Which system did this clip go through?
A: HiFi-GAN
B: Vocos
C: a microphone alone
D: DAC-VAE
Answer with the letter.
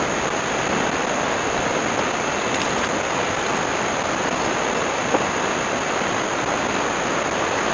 C